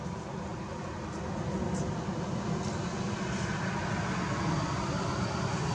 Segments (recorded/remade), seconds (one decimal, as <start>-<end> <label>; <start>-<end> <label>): 0.0-5.7 recorded